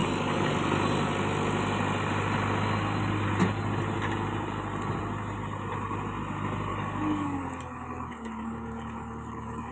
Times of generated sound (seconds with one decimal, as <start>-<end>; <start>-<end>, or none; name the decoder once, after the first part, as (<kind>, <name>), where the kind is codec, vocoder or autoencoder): 0.0-0.5 (codec, DAC); 6.7-9.7